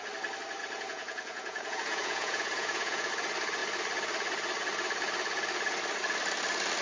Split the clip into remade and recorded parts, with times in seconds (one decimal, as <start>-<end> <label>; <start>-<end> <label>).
0.0-0.6 recorded; 0.6-3.1 remade; 3.1-6.8 recorded